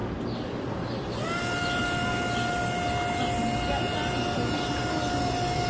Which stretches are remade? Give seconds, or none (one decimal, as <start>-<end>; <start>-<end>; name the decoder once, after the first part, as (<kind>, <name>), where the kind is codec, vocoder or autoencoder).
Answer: 0.6-1.8 (vocoder, BigVGAN v2); 5.2-5.7